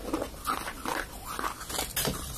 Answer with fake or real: real